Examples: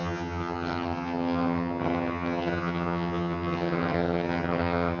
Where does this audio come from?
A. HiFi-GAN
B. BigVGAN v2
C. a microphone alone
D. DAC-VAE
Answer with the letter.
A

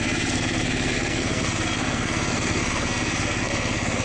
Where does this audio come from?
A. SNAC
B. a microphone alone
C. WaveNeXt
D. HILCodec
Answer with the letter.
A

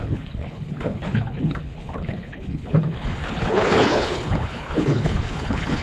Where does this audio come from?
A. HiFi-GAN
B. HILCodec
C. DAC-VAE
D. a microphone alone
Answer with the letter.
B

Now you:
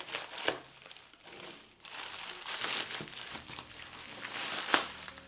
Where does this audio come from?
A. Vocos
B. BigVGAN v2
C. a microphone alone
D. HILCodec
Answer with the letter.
B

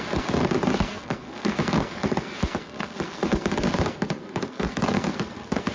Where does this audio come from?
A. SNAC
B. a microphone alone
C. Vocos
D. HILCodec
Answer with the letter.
A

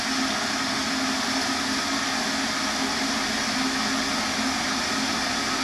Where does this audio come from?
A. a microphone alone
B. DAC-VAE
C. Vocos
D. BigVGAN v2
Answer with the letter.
A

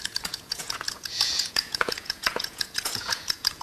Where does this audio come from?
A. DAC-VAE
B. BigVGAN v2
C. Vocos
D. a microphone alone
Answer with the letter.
C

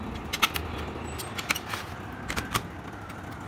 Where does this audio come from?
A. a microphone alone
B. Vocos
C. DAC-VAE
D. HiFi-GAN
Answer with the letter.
A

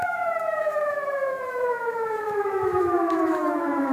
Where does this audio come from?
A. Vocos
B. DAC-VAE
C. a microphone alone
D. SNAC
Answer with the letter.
B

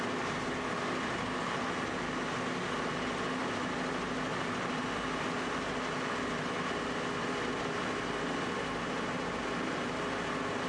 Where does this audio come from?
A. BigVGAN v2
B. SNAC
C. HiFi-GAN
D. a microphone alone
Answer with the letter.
D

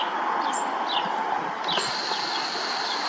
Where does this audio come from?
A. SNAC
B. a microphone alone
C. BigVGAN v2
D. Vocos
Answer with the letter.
B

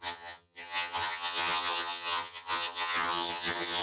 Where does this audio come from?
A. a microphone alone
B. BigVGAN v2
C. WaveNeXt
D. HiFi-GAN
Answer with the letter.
D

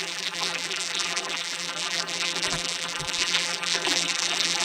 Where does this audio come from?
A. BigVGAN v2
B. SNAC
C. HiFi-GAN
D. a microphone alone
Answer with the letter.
A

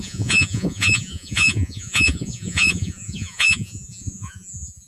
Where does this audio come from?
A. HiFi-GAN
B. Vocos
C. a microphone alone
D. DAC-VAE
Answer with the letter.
B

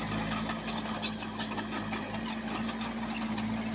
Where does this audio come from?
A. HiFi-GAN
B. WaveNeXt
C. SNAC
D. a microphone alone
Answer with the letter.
D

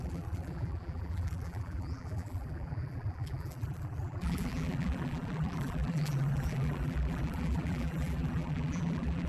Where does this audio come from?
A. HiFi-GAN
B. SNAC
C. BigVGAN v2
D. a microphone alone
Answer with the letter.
C